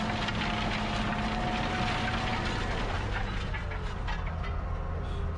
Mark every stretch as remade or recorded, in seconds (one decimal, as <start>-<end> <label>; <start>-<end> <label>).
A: 0.0-5.4 recorded